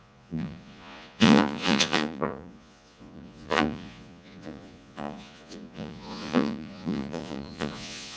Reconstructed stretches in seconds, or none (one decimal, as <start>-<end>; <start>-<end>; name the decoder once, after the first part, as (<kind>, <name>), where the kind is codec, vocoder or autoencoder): 0.0-8.2 (vocoder, Vocos)